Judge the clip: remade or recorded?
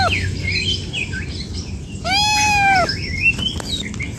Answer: recorded